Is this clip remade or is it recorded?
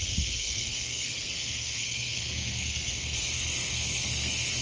remade